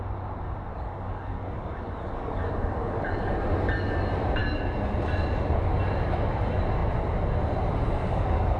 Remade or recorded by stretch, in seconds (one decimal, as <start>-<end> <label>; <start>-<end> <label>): 0.0-0.7 recorded; 0.7-3.3 remade; 3.3-8.0 recorded; 8.0-8.6 remade